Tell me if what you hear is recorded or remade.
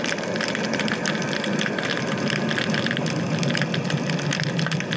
recorded